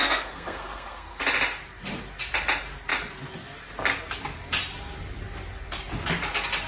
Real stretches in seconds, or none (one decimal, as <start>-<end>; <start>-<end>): 1.2-6.7

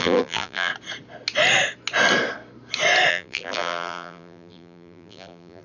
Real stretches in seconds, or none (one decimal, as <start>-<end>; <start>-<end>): 0.7-3.1

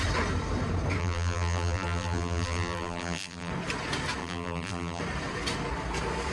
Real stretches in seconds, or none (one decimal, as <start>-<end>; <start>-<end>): 0.0-1.0; 3.5-4.2; 5.0-6.3

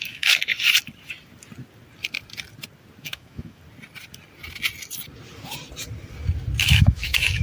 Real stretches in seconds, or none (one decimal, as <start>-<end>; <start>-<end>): 0.5-3.0; 3.6-6.6